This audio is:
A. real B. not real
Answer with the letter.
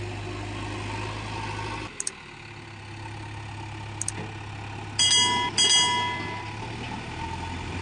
A